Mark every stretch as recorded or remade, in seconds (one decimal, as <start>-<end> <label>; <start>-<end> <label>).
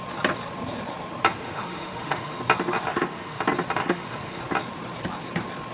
0.0-1.4 recorded; 1.4-2.4 remade; 2.4-2.9 recorded; 2.9-3.4 remade; 3.4-3.8 recorded; 3.8-4.4 remade; 4.4-5.7 recorded